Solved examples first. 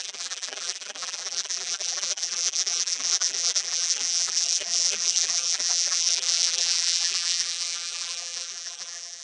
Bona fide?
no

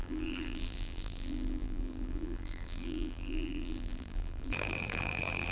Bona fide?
no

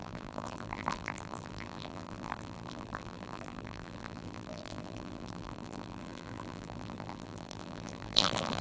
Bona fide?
no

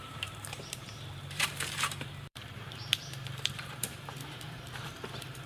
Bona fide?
no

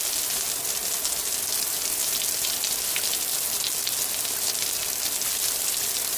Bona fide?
yes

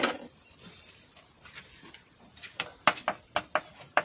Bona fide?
no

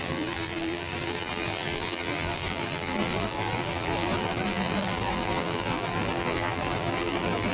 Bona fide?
no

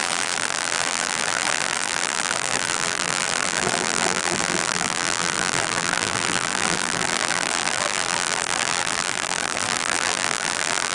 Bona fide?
no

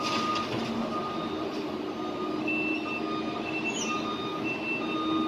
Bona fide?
yes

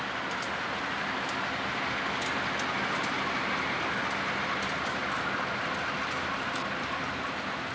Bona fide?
yes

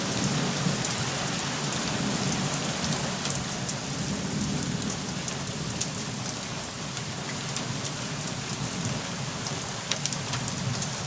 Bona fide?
yes